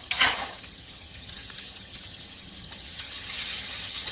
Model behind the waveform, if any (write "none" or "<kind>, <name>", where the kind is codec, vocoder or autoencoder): vocoder, HiFi-GAN